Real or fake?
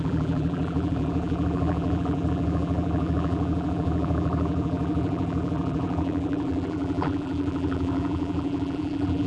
fake